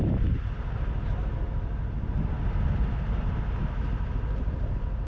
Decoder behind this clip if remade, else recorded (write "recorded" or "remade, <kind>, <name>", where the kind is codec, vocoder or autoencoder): recorded